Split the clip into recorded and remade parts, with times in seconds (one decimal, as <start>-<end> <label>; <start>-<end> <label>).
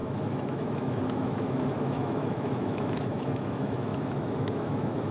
0.0-5.1 remade